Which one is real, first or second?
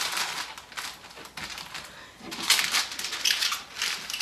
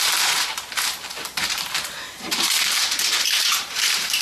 first